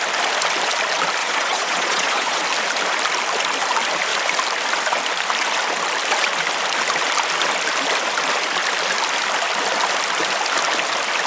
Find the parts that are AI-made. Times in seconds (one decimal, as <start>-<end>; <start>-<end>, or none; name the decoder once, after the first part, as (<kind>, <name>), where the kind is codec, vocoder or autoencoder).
1.2-2.4 (vocoder, Vocos)